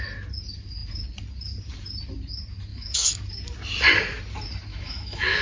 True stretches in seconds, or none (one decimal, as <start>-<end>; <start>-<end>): 0.0-2.7; 3.2-4.7